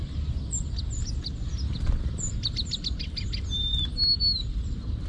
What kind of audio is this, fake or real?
real